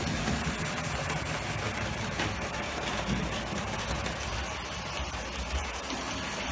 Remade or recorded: recorded